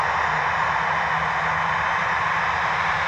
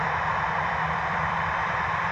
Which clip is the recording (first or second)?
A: first